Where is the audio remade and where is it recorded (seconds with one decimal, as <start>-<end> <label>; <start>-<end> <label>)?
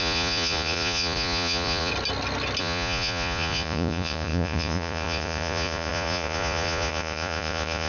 0.0-1.9 remade; 1.9-2.6 recorded; 2.6-7.9 remade